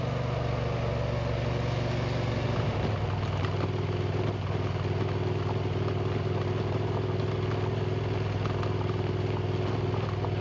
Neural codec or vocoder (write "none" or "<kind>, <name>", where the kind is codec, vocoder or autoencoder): none